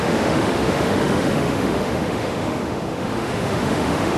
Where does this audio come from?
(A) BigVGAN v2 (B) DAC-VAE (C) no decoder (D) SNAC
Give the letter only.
B